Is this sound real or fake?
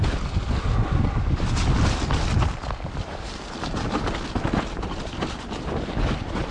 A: real